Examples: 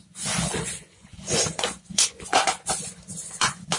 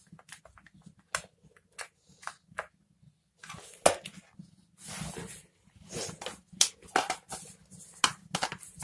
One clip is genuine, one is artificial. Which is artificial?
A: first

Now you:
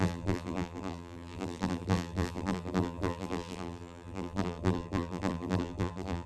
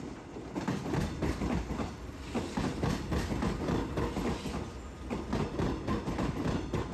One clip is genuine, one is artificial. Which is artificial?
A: first